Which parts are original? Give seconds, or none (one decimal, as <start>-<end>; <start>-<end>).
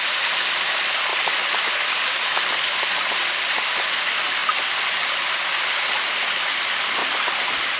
0.0-7.8